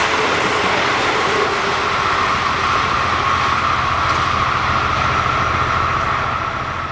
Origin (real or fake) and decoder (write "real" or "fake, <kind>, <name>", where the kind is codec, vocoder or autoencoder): real